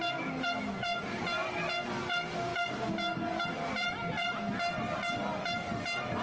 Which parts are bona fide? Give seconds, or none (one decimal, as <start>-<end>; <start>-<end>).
0.0-6.2